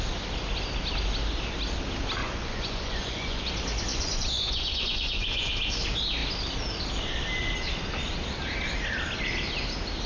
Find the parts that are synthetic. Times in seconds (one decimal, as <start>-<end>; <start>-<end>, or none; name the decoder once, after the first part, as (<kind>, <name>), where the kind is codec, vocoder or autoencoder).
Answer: 2.2-3.5 (vocoder, Vocos); 3.9-5.5